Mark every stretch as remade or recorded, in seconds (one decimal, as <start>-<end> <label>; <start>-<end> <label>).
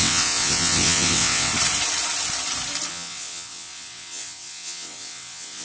0.0-1.5 remade; 1.5-2.9 recorded; 2.9-5.6 remade